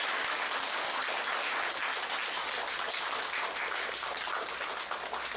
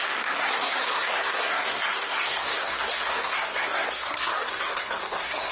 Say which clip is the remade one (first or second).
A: second